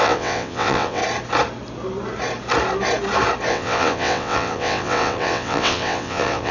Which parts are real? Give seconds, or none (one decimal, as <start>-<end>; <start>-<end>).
1.0-3.5